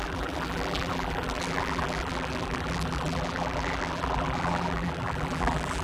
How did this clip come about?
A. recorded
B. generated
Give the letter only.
B